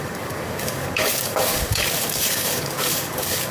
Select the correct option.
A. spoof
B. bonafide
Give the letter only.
A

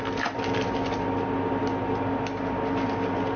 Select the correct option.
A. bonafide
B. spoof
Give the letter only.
A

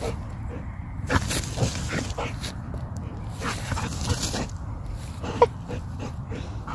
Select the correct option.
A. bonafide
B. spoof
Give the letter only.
B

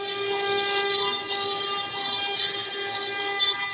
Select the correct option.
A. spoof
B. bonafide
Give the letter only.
B